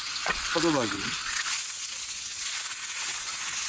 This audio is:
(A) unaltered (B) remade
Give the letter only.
B